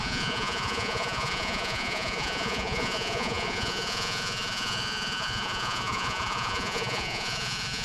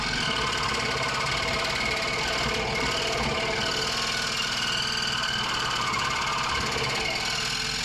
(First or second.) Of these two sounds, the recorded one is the second